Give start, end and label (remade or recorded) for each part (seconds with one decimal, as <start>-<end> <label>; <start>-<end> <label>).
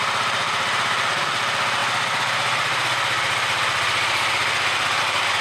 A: 0.0-1.8 remade; 1.8-5.0 recorded; 5.0-5.4 remade